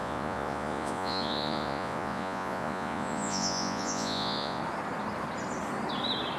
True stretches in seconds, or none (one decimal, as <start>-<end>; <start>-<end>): 4.6-6.4